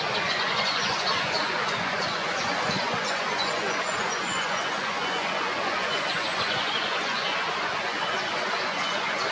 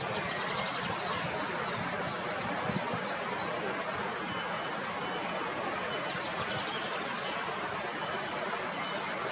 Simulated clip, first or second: first